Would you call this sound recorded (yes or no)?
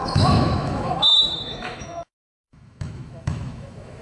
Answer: no